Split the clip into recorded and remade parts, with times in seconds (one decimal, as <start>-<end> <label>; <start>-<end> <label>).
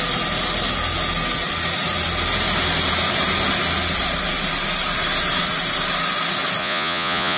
0.0-6.6 recorded; 6.6-7.4 remade